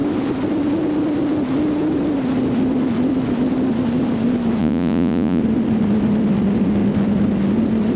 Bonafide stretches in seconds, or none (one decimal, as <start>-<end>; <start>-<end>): 0.0-4.6; 5.4-8.0